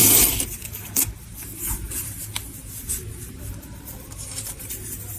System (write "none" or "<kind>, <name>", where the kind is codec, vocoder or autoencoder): vocoder, BigVGAN v2